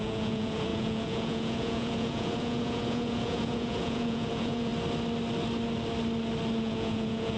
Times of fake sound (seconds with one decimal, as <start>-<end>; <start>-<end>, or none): 0.0-4.7; 6.6-7.4